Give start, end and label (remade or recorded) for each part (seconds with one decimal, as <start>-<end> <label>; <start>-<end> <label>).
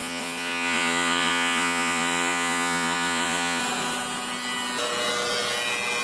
0.0-3.6 remade; 3.6-6.0 recorded